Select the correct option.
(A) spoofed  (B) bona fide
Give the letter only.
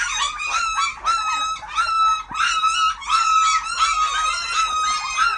B